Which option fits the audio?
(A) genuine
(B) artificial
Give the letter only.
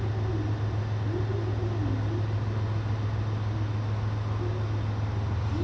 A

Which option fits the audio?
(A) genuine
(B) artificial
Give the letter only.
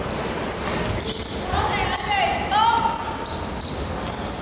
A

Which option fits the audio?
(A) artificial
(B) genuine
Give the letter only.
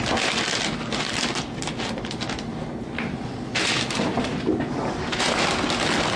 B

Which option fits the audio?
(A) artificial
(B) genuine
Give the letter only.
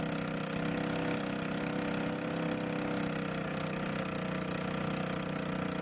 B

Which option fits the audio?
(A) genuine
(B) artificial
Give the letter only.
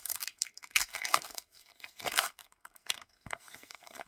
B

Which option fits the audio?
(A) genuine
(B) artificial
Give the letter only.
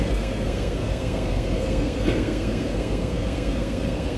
B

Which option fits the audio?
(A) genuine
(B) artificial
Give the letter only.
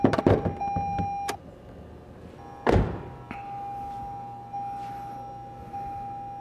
A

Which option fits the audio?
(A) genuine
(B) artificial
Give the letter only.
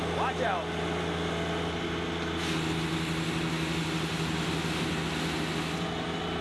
A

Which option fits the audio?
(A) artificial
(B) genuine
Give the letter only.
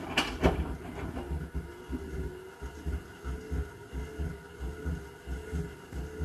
B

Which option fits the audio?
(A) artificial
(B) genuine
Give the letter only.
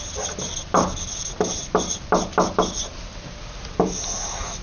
B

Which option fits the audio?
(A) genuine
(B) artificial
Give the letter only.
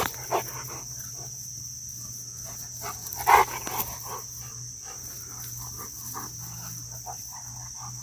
A